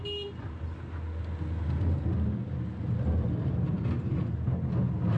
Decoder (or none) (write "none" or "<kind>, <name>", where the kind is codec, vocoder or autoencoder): none